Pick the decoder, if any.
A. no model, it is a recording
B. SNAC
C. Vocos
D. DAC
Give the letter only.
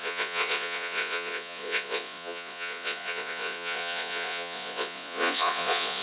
C